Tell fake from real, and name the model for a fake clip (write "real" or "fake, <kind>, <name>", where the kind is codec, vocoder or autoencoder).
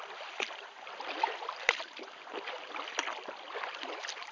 real